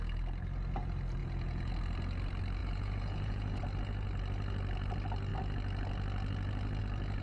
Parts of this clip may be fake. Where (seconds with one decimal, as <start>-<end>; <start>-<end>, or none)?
1.2-1.7; 2.6-3.6